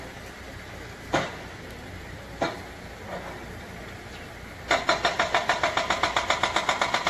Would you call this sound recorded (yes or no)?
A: yes